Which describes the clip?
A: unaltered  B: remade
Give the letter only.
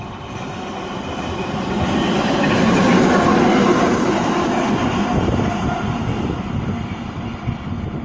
A